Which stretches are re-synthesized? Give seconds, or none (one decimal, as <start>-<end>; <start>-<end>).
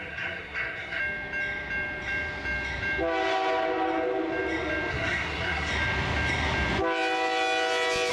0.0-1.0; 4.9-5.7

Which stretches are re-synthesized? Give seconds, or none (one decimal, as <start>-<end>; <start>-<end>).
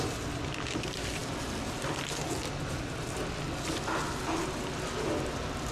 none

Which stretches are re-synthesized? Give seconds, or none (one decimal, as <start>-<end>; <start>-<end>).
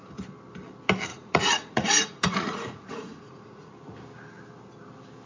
1.1-3.7